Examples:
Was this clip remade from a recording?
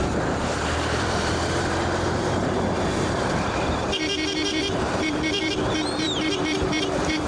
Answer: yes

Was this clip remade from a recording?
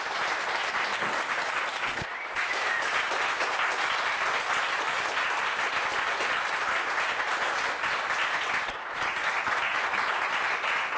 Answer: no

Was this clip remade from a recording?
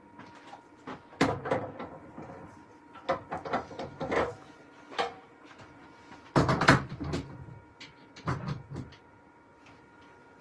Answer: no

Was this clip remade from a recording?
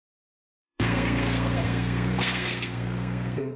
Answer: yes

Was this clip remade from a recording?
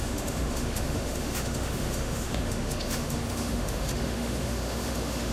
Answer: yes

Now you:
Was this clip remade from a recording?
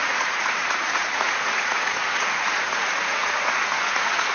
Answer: yes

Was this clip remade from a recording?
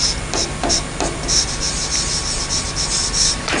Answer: no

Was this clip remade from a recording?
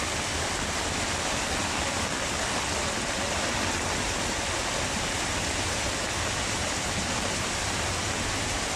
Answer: no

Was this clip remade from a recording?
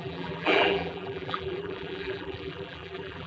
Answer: yes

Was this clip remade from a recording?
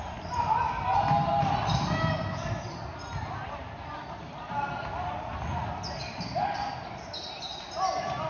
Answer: no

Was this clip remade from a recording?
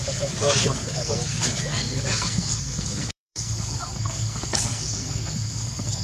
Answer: yes